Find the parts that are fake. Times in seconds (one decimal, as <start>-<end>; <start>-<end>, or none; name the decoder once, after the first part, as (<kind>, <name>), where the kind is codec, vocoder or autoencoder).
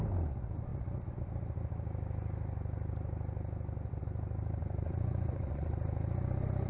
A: 4.6-5.7 (vocoder, Vocos)